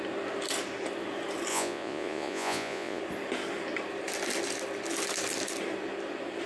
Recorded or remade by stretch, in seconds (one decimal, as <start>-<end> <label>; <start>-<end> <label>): 0.0-1.5 recorded; 1.5-3.0 remade; 3.0-6.5 recorded